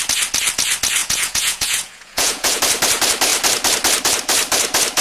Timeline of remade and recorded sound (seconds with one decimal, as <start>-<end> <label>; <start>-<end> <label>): 0.0-1.0 recorded; 1.0-2.6 remade; 2.6-5.0 recorded